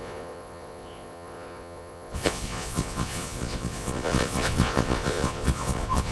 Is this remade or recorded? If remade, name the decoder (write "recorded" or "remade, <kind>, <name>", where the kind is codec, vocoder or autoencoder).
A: remade, vocoder, Vocos